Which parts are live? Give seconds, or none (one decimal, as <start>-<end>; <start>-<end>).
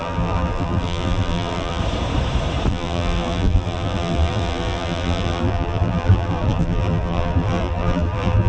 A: 1.8-2.7